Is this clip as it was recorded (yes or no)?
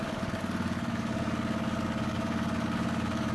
no